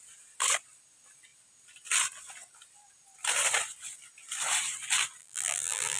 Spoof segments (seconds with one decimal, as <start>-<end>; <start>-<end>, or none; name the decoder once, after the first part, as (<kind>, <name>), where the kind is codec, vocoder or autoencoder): 5.2-6.0 (vocoder, BigVGAN v2)